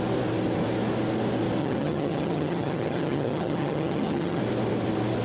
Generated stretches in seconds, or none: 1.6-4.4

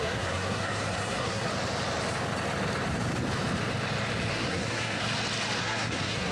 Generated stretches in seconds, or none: 0.0-1.5; 4.3-5.0; 5.6-6.3